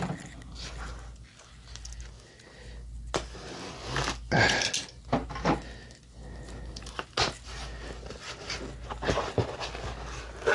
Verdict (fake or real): real